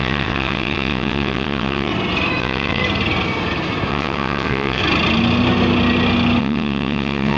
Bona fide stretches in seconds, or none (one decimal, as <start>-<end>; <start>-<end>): 1.9-2.4; 2.8-3.9; 4.8-6.4